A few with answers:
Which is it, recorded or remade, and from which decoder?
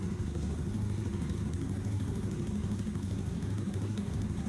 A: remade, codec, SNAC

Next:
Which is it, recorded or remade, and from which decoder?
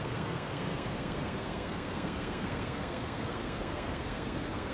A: remade, codec, SNAC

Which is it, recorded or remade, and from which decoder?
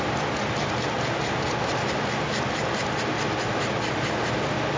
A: recorded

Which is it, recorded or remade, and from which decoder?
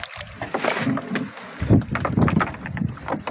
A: recorded